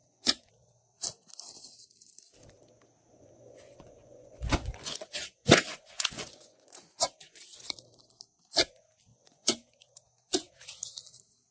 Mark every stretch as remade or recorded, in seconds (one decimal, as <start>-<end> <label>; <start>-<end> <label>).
0.0-0.5 remade; 0.5-3.1 recorded; 3.1-7.6 remade; 7.6-9.1 recorded; 9.1-10.5 remade; 10.5-11.5 recorded